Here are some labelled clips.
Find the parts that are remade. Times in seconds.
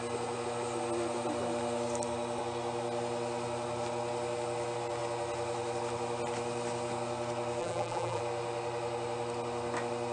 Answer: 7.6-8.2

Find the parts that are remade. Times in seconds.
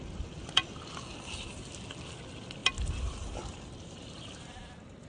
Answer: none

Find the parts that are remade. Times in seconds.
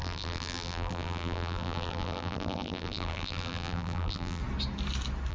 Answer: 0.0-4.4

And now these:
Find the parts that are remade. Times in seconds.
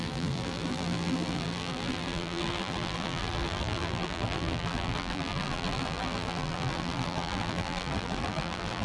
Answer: 0.0-8.8